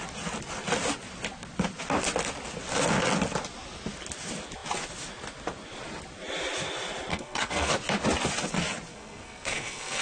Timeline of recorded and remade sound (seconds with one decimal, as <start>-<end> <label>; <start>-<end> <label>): 0.0-7.1 recorded; 7.1-7.7 remade; 7.7-8.9 recorded; 8.9-10.0 remade